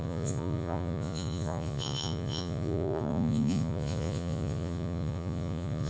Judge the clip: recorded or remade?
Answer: remade